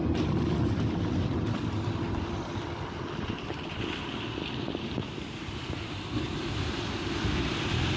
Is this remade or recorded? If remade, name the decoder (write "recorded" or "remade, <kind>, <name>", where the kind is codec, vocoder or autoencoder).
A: recorded